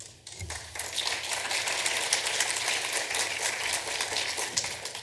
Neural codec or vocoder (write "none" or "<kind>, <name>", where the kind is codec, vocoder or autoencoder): none